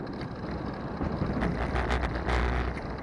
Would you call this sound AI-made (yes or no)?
no